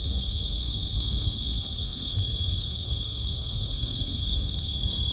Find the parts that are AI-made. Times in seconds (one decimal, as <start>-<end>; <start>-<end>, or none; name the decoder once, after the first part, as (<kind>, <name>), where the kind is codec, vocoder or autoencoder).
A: 0.0-5.1 (codec, SNAC)